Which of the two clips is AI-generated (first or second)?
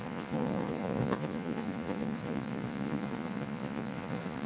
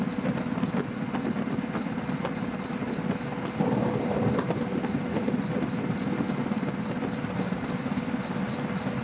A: first